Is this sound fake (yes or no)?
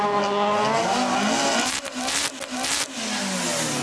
no